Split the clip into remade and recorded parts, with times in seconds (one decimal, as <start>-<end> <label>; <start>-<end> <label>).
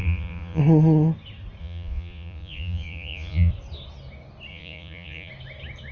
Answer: 0.0-0.6 remade; 0.6-1.6 recorded; 1.6-3.5 remade; 3.5-4.5 recorded; 4.5-5.3 remade; 5.3-5.9 recorded